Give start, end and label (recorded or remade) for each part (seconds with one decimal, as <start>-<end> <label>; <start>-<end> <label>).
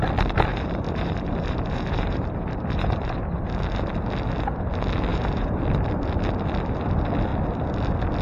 0.0-0.5 recorded; 0.5-3.5 remade; 3.5-5.1 recorded; 5.1-5.6 remade; 5.6-8.2 recorded